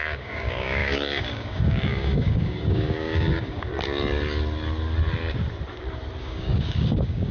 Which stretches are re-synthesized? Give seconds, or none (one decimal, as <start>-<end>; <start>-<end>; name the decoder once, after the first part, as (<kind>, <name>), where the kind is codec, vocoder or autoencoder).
0.0-3.7 (codec, DAC); 6.2-7.3

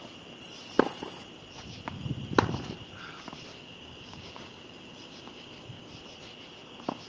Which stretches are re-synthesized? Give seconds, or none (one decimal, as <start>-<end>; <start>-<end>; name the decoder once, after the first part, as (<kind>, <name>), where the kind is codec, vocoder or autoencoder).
3.5-5.9 (codec, DAC)

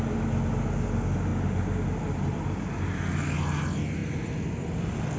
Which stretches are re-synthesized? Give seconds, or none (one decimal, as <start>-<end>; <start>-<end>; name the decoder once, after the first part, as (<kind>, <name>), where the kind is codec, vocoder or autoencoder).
none

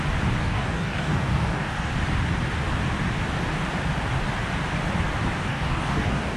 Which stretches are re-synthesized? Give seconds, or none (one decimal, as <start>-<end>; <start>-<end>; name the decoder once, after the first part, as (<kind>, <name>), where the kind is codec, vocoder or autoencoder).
0.4-1.9 (codec, DAC); 5.5-6.4

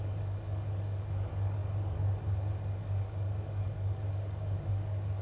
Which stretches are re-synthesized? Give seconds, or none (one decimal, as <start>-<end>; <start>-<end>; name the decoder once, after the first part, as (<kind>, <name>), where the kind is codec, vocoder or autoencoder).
0.0-5.2 (codec, DAC)

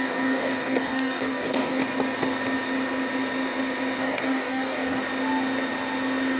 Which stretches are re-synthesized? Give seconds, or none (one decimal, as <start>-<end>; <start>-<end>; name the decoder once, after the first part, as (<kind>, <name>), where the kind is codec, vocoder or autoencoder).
0.0-1.8 (codec, DAC); 4.0-5.0